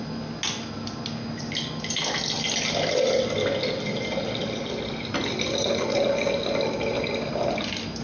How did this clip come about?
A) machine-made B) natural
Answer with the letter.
B